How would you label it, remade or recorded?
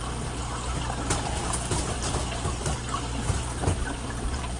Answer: recorded